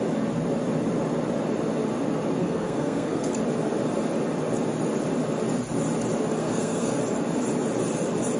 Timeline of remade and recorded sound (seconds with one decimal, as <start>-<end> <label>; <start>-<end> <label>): 0.0-2.4 recorded; 2.4-3.3 remade; 3.3-6.4 recorded; 6.4-7.0 remade; 7.0-8.4 recorded